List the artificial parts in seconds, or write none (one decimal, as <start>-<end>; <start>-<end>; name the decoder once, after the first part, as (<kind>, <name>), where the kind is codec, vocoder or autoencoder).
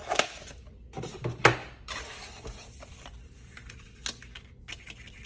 1.6-4.0 (vocoder, BigVGAN v2)